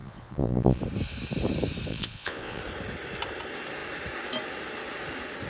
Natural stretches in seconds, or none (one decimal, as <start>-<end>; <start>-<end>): 0.8-1.9; 2.6-5.5